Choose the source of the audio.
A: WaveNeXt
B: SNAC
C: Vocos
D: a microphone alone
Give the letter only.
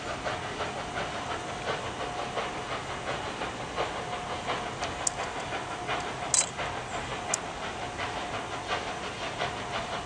D